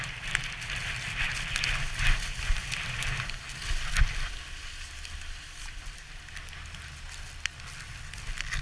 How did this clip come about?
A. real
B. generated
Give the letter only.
A